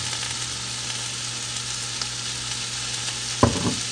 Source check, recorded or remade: recorded